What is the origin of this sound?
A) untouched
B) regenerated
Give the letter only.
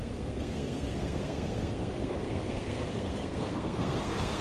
B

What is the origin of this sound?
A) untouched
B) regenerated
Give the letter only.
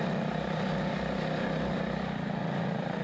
A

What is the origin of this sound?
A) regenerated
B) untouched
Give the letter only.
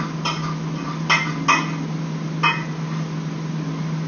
B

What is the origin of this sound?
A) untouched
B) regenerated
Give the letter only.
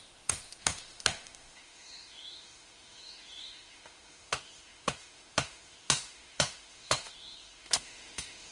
B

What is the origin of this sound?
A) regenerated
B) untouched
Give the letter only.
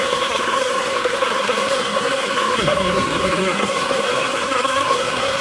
A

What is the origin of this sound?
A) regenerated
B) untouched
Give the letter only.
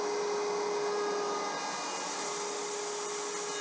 B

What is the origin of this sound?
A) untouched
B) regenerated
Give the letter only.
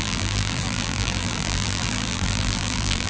B